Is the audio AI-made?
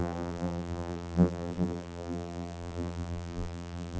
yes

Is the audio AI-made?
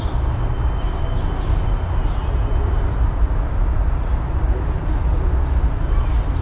no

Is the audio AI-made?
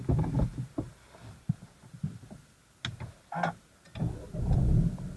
no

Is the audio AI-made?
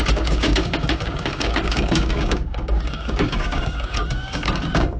yes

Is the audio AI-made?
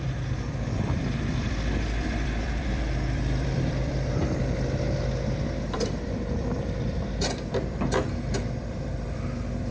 yes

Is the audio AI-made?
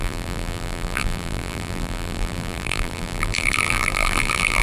yes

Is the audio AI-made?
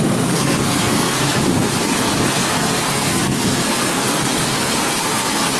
yes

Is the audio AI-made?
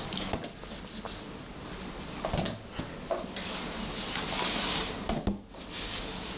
no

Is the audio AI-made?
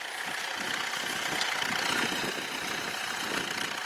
no